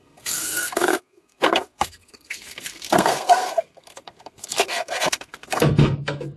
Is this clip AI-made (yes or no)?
yes